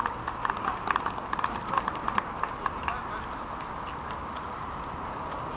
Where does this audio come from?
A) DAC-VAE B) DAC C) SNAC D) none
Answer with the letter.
D